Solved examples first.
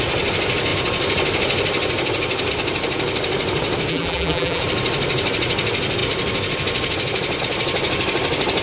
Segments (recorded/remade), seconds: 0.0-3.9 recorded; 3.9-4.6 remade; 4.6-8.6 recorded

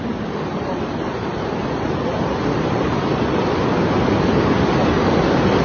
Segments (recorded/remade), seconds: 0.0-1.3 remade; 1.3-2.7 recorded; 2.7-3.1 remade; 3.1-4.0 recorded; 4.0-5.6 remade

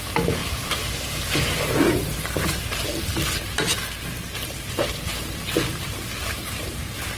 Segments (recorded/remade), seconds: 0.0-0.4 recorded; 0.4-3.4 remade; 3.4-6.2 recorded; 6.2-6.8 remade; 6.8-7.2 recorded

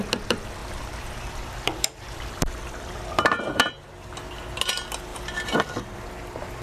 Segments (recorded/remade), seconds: 0.0-0.6 recorded; 0.6-3.8 remade; 3.8-5.1 recorded; 5.1-6.1 remade; 6.1-6.6 recorded